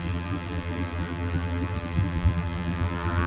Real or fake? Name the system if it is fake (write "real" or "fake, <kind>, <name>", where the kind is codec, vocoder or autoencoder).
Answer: fake, vocoder, BigVGAN v2